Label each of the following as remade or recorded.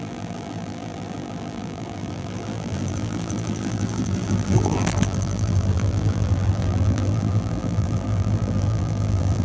remade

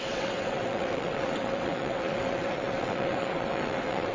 remade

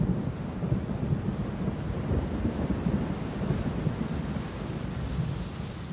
recorded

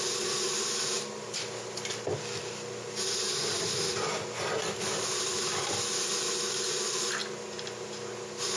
recorded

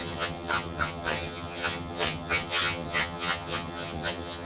remade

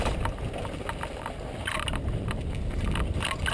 recorded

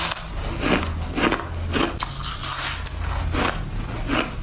recorded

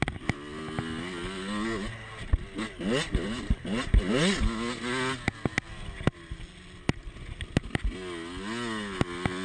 recorded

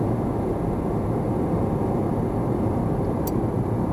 recorded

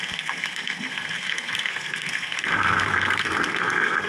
remade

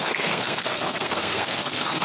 remade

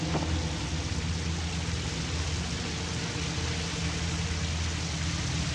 recorded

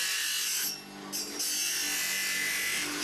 recorded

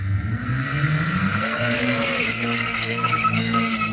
remade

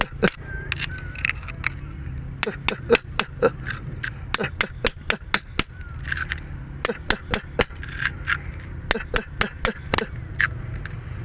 recorded